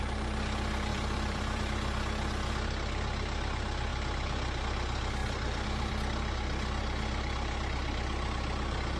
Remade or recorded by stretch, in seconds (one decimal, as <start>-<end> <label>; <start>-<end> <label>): 0.0-0.9 recorded; 0.9-1.6 remade; 1.6-5.2 recorded; 5.2-5.9 remade; 5.9-9.0 recorded